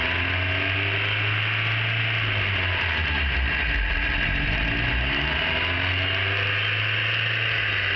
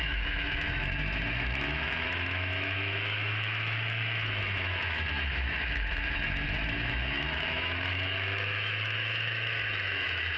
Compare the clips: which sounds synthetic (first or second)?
second